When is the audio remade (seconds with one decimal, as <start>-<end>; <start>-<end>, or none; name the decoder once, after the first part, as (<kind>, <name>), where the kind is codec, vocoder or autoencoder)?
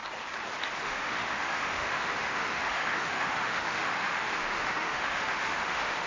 0.8-6.1 (autoencoder, DAC-VAE)